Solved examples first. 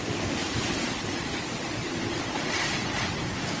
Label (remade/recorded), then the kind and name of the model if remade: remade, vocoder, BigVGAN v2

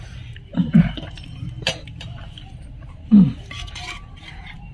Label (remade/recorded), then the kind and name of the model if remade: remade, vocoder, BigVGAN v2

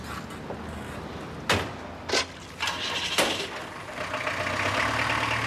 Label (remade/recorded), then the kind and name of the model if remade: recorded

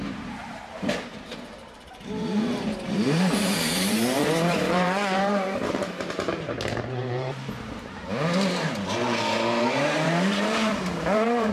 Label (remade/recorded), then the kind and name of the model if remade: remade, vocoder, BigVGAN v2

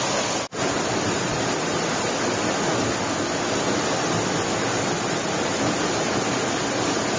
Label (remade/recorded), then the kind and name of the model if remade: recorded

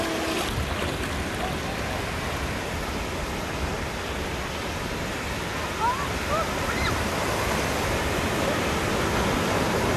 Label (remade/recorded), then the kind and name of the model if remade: recorded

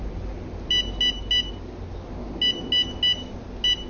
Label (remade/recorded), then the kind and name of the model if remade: recorded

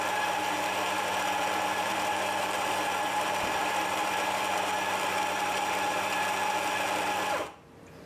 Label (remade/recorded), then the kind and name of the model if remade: remade, vocoder, BigVGAN v2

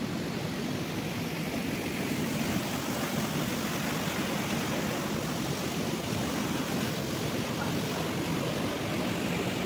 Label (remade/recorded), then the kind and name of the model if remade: recorded